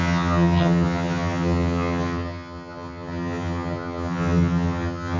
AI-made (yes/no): yes